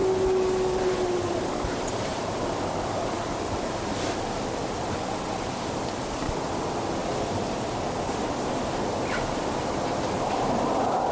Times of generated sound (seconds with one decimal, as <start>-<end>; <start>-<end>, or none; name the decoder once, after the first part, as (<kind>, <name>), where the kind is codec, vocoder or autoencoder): 2.1-3.7 (vocoder, BigVGAN v2); 7.0-8.5